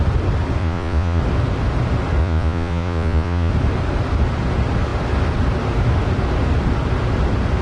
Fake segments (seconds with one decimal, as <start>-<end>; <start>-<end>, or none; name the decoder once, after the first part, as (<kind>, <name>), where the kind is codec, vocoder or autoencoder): 0.6-1.2 (vocoder, Vocos); 2.2-3.5